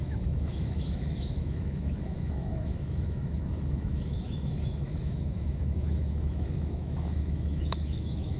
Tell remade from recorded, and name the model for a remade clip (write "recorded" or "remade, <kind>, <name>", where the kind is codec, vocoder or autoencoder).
remade, autoencoder, DAC-VAE